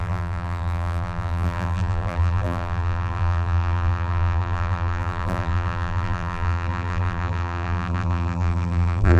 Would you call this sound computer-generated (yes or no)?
yes